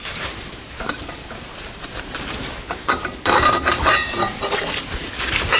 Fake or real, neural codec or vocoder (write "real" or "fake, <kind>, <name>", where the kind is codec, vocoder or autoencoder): fake, vocoder, BigVGAN v2